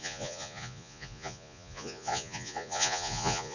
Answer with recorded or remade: remade